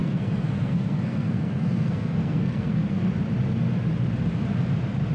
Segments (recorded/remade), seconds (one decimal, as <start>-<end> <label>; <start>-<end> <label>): 0.0-3.1 remade; 3.1-5.1 recorded

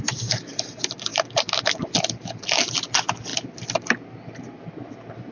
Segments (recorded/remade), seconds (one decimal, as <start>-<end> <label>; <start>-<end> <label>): 0.0-5.3 recorded

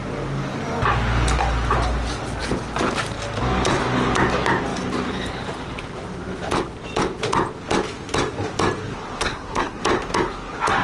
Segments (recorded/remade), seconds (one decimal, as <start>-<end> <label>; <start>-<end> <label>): 0.0-9.3 recorded; 9.3-9.8 remade; 9.8-10.8 recorded

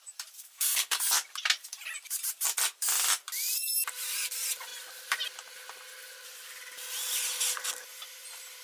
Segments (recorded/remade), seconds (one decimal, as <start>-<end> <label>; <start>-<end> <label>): 0.0-0.4 recorded; 0.4-1.0 remade; 1.0-8.6 recorded

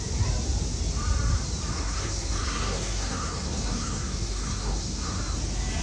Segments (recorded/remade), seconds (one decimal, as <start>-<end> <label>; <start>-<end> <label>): 0.0-1.7 recorded; 1.7-5.2 remade; 5.2-5.8 recorded

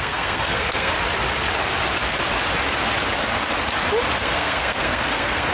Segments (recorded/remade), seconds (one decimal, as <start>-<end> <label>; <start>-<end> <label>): 0.0-0.9 remade; 0.9-4.2 recorded; 4.2-5.5 remade

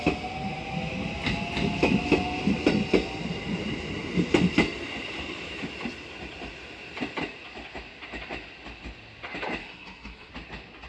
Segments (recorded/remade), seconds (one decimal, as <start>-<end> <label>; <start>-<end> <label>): 0.0-9.6 recorded; 9.6-10.3 remade; 10.3-10.9 recorded